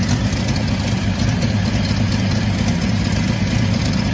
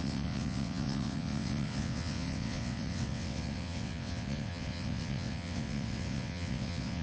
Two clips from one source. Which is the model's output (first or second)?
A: second